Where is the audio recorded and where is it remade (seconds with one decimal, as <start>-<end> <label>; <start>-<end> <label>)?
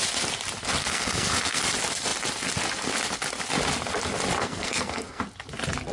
0.0-0.8 recorded; 0.8-1.6 remade; 1.6-4.4 recorded; 4.4-5.2 remade; 5.2-5.9 recorded